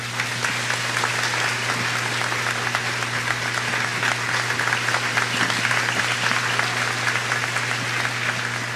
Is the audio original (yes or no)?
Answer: yes